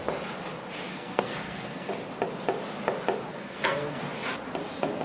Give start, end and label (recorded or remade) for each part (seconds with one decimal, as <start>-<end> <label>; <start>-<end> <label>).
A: 0.0-0.9 recorded; 0.9-1.9 remade; 1.9-3.3 recorded; 3.3-4.0 remade; 4.0-5.0 recorded